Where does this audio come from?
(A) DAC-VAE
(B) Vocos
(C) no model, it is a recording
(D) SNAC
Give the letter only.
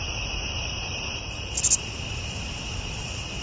C